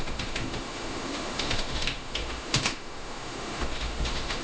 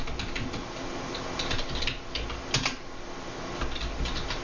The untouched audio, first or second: second